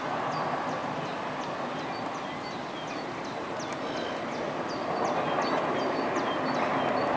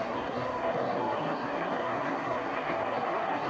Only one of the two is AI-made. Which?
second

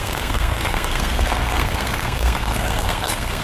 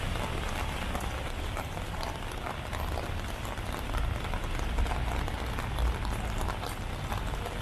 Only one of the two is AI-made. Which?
first